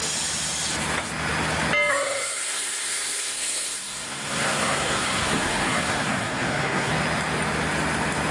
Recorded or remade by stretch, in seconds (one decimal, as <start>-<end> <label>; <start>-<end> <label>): 0.0-1.9 recorded; 1.9-6.9 remade; 6.9-8.3 recorded